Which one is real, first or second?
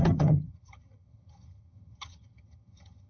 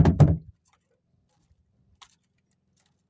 second